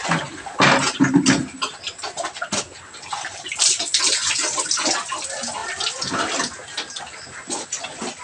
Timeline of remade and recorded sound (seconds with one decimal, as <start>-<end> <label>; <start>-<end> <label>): 0.0-8.2 recorded